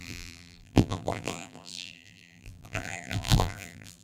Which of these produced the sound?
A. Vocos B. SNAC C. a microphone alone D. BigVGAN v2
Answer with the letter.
D